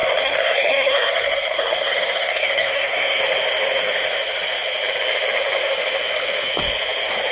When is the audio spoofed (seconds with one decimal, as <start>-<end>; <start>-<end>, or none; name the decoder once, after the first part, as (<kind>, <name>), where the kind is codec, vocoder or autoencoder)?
0.0-3.2 (codec, SNAC)

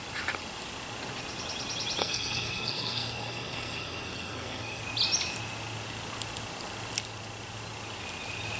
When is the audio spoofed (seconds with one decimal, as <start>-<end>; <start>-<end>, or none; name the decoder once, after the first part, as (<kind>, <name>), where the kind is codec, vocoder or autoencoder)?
2.0-4.8 (codec, SNAC)

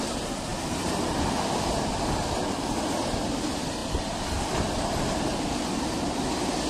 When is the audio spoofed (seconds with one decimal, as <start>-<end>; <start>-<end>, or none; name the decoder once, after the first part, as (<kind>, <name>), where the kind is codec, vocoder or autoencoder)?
none

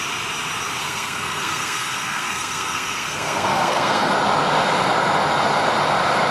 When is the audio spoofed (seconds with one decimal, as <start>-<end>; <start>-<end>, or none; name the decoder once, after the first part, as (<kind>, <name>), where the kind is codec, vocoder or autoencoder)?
0.8-4.1 (codec, SNAC)

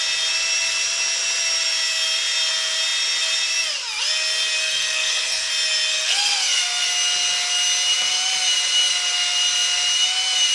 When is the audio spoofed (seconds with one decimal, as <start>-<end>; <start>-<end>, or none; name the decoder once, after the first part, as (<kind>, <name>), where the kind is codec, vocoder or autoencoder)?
4.6-5.5 (codec, SNAC); 5.9-6.9